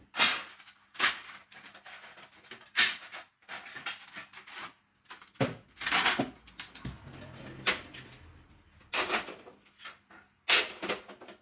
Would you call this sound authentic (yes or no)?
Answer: yes